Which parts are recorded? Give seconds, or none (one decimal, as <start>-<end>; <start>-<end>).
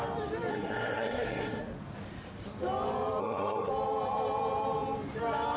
0.0-0.5; 1.6-3.2; 3.7-5.6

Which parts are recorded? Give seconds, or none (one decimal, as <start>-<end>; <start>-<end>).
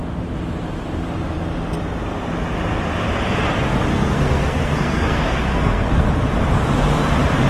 0.0-3.9; 6.1-7.5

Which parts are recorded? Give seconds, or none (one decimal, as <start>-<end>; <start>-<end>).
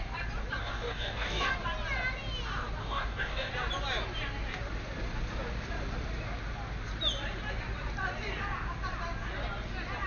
0.0-0.6; 1.5-2.8; 3.5-10.1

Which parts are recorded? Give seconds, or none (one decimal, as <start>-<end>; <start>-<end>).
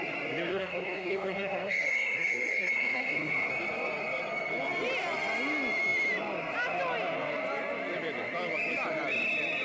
0.0-0.5; 3.5-9.6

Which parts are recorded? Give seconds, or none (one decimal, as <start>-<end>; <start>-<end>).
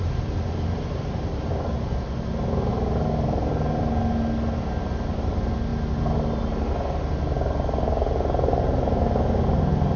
0.0-10.0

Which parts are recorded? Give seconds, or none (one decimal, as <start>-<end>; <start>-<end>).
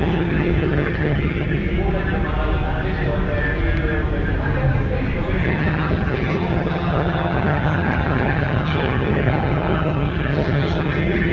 1.6-5.4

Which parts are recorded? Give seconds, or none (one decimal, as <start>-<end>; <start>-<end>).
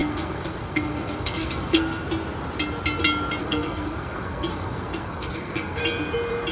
2.1-3.4; 5.8-6.5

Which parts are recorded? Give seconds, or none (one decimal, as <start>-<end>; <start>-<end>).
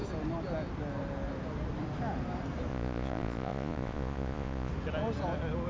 0.0-2.7; 4.7-5.7